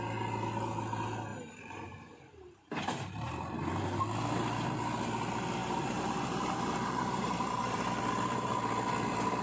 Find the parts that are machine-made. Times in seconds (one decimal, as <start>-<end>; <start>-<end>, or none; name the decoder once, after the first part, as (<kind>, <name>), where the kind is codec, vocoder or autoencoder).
1.3-4.0 (vocoder, BigVGAN v2); 5.6-7.9